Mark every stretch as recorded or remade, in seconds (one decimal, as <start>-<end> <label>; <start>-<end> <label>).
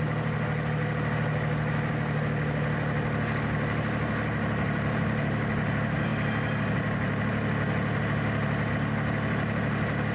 0.0-10.1 recorded